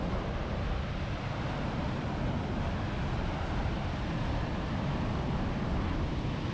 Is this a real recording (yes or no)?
yes